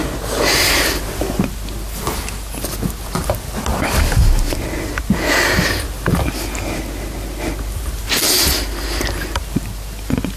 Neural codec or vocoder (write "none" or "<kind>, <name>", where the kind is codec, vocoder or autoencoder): none